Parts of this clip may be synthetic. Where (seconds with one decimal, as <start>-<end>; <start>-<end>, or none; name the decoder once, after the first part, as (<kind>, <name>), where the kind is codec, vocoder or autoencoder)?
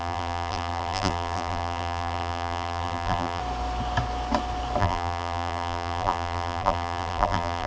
0.0-3.4 (vocoder, BigVGAN v2); 4.8-7.7